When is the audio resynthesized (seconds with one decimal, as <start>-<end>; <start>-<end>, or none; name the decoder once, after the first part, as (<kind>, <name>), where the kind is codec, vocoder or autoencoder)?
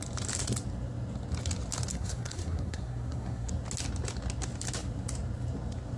1.9-3.5 (codec, SNAC)